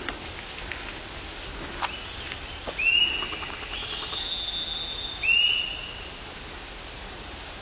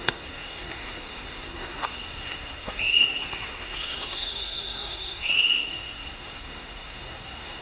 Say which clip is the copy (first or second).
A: second